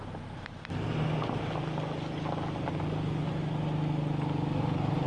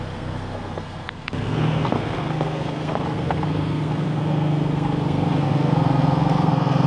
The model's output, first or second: second